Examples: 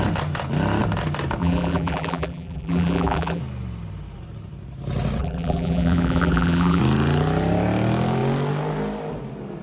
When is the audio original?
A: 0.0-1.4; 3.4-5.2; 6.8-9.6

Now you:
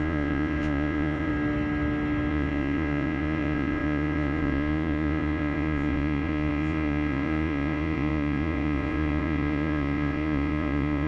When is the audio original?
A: 1.3-2.3

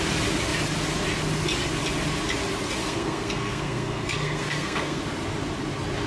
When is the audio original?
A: 0.0-2.8; 5.0-6.1

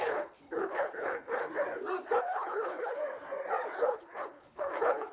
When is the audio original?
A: 1.4-2.2; 3.0-3.8